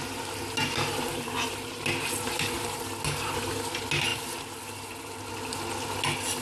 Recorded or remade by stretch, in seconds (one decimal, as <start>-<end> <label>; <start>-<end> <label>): 0.0-6.4 recorded